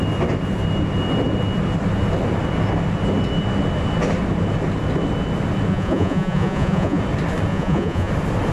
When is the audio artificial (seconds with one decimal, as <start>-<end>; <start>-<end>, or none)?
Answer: 5.7-7.0; 7.5-8.1